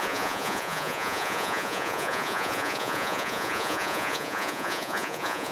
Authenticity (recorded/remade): remade